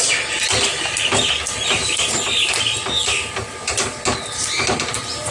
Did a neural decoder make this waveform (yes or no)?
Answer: no